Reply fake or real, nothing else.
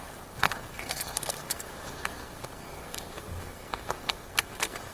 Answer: fake